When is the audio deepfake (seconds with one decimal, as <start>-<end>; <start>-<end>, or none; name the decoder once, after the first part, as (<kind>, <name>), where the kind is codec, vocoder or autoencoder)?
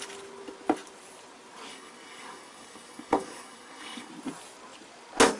1.7-4.1 (codec, DAC)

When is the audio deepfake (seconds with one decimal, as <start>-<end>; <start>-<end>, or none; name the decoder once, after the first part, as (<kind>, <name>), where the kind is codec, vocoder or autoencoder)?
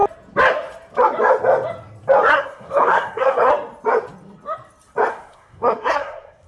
2.3-3.5 (codec, SNAC); 5.1-6.5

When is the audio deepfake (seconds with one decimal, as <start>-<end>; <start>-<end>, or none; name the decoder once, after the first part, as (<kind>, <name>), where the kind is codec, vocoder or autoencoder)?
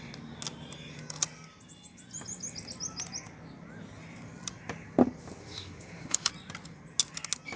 5.4-6.3 (autoencoder, DAC-VAE)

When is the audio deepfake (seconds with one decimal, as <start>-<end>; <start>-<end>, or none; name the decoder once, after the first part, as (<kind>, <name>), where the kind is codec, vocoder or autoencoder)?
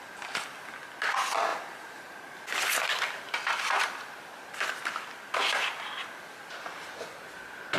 none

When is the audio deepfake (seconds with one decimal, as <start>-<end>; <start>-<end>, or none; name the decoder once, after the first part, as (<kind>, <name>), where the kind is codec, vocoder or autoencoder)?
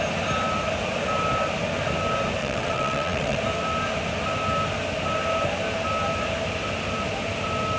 2.4-3.4 (vocoder, WaveNeXt)